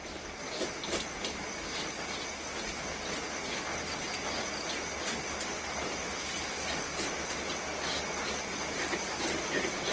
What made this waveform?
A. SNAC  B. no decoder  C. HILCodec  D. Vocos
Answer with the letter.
B